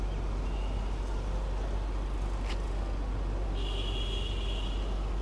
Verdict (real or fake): real